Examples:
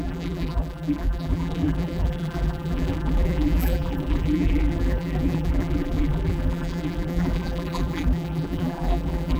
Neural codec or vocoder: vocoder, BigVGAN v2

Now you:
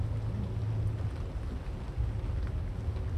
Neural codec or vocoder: none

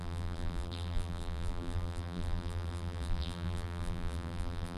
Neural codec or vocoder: vocoder, BigVGAN v2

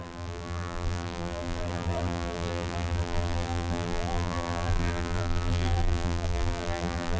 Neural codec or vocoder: vocoder, BigVGAN v2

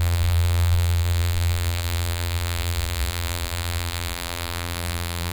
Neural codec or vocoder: vocoder, BigVGAN v2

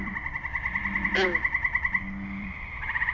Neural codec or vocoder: vocoder, BigVGAN v2